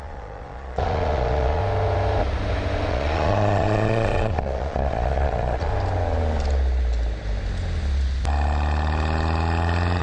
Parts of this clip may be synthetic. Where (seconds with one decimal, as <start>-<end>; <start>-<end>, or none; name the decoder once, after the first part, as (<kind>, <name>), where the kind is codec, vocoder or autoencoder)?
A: 0.0-1.6 (vocoder, Vocos); 2.9-5.7